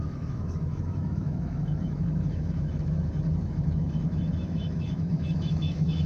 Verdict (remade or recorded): remade